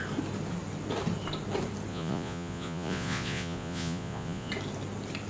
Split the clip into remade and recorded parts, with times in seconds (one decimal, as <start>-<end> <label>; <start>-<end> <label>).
0.0-1.9 recorded; 1.9-4.5 remade; 4.5-5.3 recorded